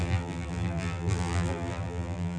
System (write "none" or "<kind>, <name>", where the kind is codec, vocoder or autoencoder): vocoder, BigVGAN v2